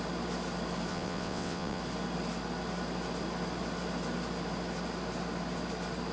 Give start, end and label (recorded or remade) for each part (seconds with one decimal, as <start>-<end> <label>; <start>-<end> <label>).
0.0-0.9 recorded; 0.9-1.8 remade; 1.8-6.1 recorded